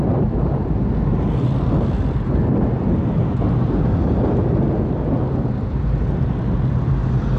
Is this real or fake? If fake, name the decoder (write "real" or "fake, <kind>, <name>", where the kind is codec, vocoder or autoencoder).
real